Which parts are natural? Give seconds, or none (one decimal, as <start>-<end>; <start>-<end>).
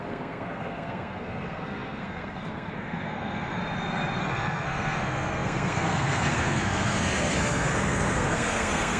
3.6-4.2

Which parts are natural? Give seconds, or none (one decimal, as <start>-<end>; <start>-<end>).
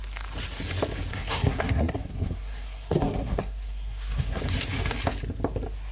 0.0-1.1; 4.4-5.9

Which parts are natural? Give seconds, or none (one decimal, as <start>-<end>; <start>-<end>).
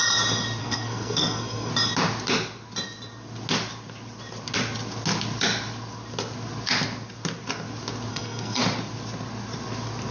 0.0-0.6; 1.7-8.1; 8.6-10.1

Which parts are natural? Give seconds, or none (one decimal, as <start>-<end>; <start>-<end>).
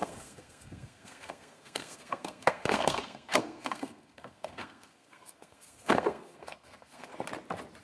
7.1-7.8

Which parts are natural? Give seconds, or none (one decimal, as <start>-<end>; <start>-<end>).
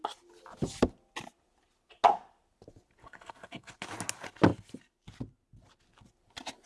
0.0-3.0; 3.7-6.7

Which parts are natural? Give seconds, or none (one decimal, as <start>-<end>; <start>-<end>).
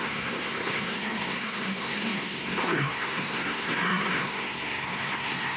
none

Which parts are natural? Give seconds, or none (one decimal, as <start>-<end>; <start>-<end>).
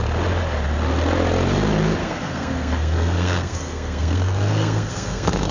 0.0-2.0